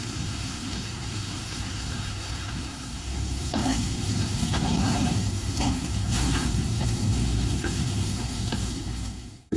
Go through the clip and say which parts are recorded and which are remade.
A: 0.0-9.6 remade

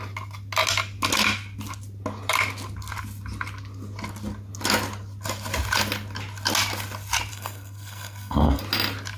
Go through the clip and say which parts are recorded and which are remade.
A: 0.0-7.3 recorded; 7.3-8.6 remade; 8.6-9.2 recorded